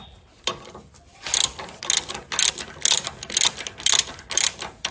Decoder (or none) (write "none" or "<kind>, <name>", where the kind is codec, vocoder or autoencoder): none